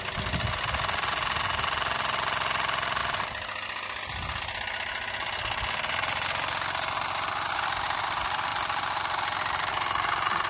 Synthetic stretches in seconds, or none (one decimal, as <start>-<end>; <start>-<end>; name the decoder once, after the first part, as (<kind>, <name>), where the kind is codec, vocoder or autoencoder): none